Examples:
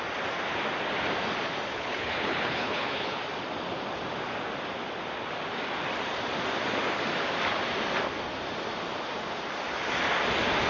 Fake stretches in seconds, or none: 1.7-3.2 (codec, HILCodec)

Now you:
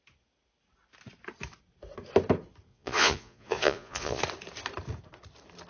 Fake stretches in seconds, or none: 2.7-4.2 (vocoder, Vocos)

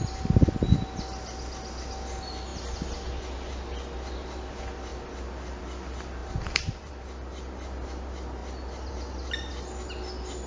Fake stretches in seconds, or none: 6.2-6.9 (vocoder, BigVGAN v2)

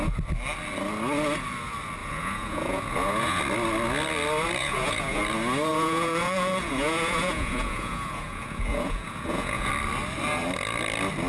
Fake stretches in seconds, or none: 2.0-3.4 (vocoder, Vocos); 4.6-5.2; 5.7-9.7

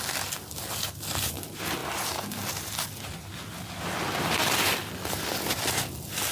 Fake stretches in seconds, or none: none